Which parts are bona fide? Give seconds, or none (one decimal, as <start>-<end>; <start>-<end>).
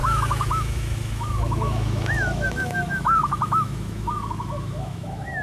none